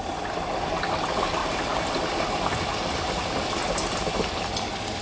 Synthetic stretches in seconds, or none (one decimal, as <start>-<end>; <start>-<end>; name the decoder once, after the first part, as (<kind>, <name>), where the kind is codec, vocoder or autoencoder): none